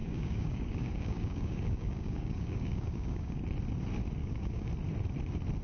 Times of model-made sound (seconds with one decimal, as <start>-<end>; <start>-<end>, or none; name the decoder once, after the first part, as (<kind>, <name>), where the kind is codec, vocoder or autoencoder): 0.0-3.4 (codec, DAC); 4.2-4.7